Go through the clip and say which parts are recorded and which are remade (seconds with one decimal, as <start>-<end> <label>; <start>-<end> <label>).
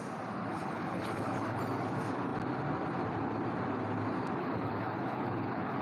0.0-0.5 recorded; 0.5-1.6 remade; 1.6-4.4 recorded; 4.4-5.8 remade